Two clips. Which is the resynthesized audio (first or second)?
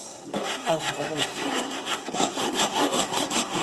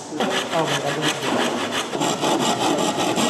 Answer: first